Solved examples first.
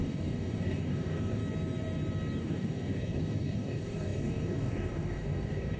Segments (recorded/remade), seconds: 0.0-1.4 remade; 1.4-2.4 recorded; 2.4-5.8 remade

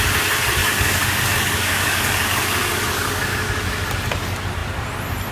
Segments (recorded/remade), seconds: 0.0-0.6 recorded; 0.6-3.8 remade; 3.8-5.3 recorded

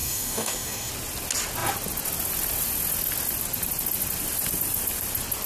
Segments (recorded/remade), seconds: 0.0-0.9 remade; 0.9-5.5 recorded

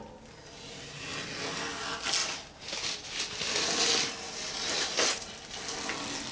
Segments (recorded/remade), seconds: 0.0-6.3 recorded

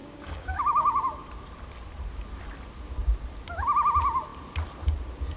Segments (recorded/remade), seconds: 0.0-1.0 remade; 1.0-5.4 recorded

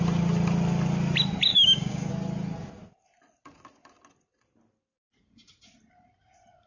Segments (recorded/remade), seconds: 0.0-1.5 recorded; 1.5-2.1 remade; 2.1-6.7 recorded

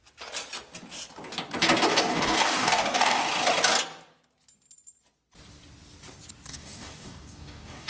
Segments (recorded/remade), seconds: 0.0-1.9 recorded; 1.9-3.2 remade; 3.2-6.5 recorded; 6.5-7.9 remade

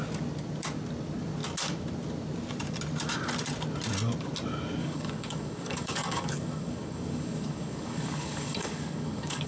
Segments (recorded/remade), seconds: 0.0-4.8 recorded; 4.8-9.5 remade